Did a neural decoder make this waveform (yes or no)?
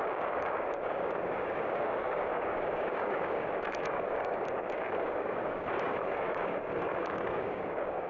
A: yes